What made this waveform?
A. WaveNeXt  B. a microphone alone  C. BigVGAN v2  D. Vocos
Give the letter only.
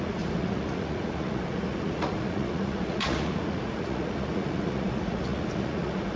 D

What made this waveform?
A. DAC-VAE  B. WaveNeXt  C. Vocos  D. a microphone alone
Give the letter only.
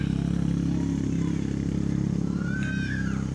D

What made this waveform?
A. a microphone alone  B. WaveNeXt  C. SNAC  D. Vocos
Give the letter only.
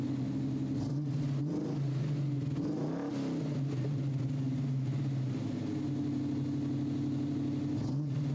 A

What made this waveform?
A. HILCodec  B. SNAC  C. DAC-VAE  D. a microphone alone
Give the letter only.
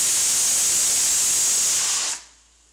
D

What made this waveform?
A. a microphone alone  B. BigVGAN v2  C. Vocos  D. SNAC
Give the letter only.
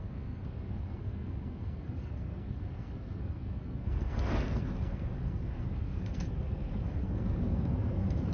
D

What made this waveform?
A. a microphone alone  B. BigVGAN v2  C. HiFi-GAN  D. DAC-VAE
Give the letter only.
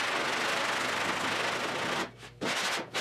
A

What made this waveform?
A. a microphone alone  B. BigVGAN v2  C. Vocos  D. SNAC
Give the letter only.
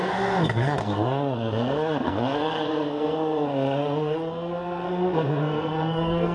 D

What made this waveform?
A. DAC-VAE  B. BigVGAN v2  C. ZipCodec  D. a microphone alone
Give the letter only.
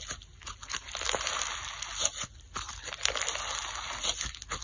D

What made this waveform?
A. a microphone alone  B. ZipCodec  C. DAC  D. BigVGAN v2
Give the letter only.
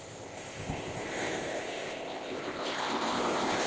B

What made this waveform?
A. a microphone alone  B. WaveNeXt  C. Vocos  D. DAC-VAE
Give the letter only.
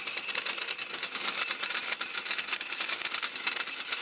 A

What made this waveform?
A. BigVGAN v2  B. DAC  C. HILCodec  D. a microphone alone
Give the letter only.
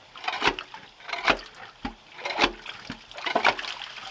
D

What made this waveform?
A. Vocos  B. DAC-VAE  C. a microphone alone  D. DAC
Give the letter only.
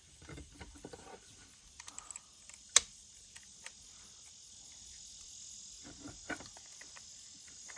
C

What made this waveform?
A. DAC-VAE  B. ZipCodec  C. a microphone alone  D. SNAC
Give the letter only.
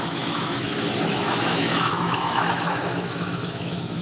A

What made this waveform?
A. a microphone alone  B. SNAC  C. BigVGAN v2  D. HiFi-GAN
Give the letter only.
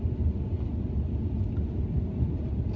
A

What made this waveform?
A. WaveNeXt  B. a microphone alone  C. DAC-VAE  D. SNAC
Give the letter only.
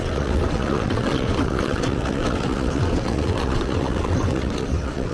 A